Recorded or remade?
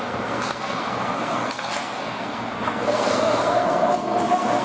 remade